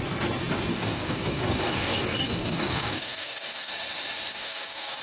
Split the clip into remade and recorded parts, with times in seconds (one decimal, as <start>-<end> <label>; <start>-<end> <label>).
0.0-0.7 recorded; 0.7-3.7 remade; 3.7-4.3 recorded; 4.3-5.0 remade